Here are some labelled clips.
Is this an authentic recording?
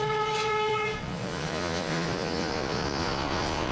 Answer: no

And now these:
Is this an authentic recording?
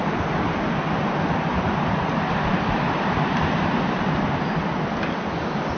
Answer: yes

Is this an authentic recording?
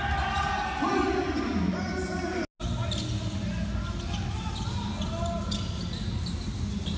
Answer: yes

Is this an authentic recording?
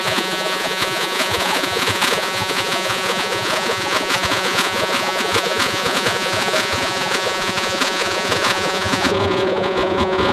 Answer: no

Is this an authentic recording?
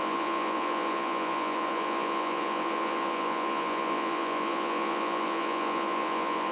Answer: no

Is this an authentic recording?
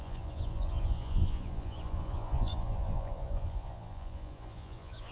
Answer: no